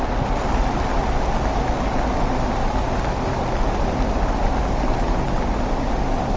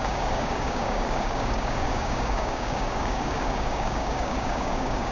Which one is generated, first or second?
second